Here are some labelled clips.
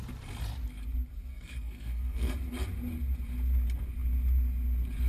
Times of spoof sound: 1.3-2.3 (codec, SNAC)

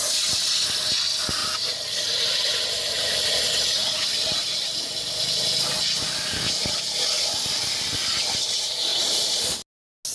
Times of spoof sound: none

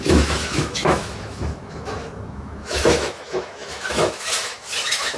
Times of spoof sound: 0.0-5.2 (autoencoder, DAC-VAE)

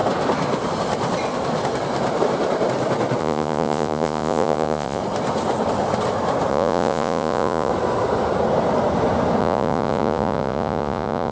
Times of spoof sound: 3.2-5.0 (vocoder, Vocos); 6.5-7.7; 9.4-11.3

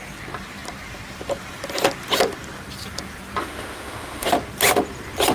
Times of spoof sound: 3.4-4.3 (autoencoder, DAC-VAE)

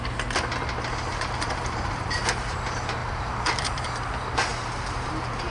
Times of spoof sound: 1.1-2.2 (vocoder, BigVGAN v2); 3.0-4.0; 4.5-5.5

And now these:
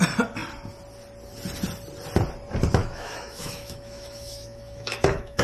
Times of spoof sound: 2.8-5.4 (autoencoder, DAC-VAE)